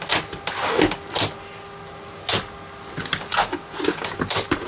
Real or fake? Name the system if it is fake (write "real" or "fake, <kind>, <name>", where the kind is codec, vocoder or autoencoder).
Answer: real